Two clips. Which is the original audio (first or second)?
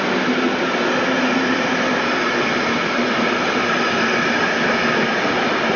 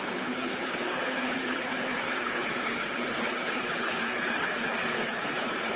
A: first